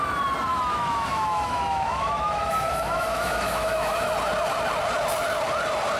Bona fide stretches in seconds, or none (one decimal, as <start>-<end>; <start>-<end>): 0.0-0.5; 4.1-6.0